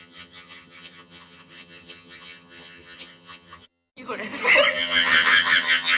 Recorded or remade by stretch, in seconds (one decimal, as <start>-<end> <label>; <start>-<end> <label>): 0.0-3.9 remade; 3.9-4.7 recorded; 4.7-6.0 remade